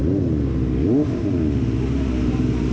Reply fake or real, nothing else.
real